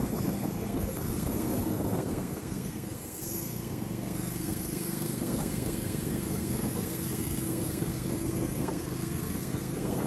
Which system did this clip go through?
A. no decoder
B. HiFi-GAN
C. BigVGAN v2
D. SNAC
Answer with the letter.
D